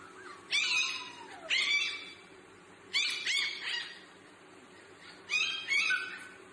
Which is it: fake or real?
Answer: real